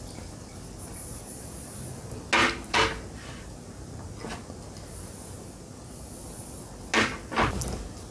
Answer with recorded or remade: recorded